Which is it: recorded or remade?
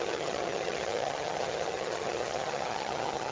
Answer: remade